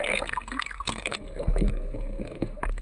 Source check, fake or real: fake